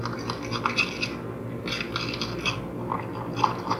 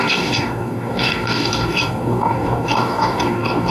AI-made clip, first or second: second